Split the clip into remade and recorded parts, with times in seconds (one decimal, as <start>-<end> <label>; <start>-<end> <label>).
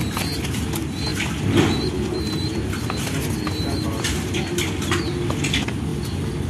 0.0-1.1 recorded; 1.1-5.0 remade; 5.0-5.9 recorded; 5.9-6.5 remade